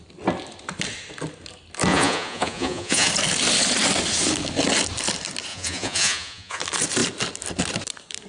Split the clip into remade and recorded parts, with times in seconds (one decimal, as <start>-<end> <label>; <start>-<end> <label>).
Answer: 0.0-1.9 recorded; 1.9-3.1 remade; 3.1-5.5 recorded; 5.5-6.6 remade; 6.6-8.3 recorded